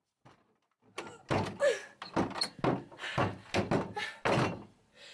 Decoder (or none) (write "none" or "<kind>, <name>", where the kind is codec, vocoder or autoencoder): none